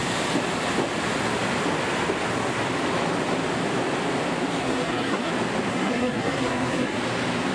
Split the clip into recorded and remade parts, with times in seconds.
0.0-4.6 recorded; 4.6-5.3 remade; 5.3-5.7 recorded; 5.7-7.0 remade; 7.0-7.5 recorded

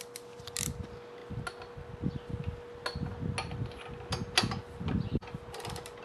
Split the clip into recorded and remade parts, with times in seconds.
0.0-6.0 recorded

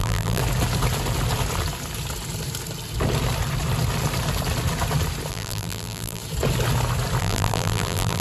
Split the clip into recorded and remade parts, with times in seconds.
0.0-0.4 remade; 0.4-5.3 recorded; 5.3-6.2 remade; 6.2-7.2 recorded; 7.2-8.2 remade

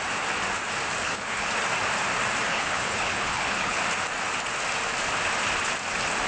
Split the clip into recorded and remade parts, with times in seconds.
0.0-1.0 recorded; 1.0-1.5 remade; 1.5-2.5 recorded; 2.5-3.8 remade; 3.8-6.3 recorded